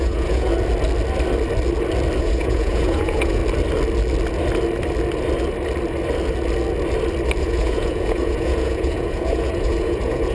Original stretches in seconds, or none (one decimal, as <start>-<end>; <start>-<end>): 0.5-2.2; 3.4-7.4